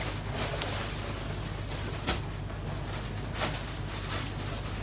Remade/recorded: recorded